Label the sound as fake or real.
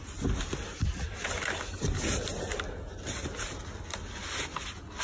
real